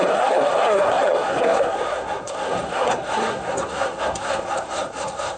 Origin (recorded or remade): remade